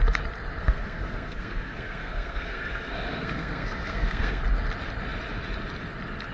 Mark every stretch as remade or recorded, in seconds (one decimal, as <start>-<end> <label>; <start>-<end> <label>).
0.0-0.6 recorded; 0.6-4.4 remade; 4.4-6.3 recorded